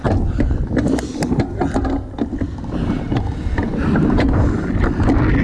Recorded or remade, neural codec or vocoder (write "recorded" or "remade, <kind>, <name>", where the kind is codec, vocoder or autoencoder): recorded